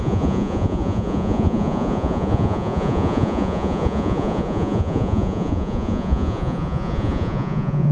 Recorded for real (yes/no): no